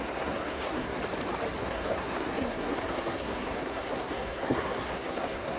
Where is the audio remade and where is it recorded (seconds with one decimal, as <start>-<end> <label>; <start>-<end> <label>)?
0.0-1.0 remade; 1.0-1.6 recorded; 1.6-5.6 remade